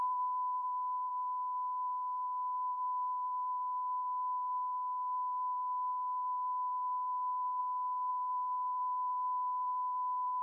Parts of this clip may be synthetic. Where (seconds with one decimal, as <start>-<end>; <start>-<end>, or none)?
0.0-7.6; 8.1-10.4